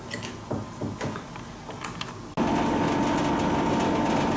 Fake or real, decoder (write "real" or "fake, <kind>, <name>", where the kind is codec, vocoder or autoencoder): real